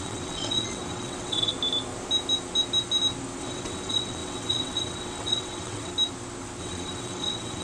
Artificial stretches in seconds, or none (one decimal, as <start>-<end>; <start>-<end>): 0.0-1.5; 3.4-5.9; 6.6-7.6